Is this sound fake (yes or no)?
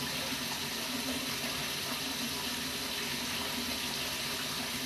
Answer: no